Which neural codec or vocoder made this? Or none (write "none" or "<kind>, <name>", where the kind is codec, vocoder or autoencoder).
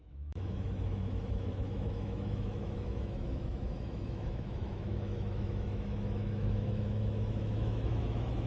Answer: autoencoder, DAC-VAE